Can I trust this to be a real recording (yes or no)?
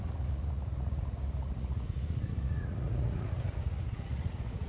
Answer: no